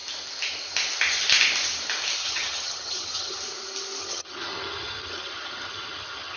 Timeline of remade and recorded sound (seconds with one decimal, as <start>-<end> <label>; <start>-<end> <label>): 0.0-2.2 recorded; 2.2-3.4 remade; 3.4-4.0 recorded; 4.0-6.4 remade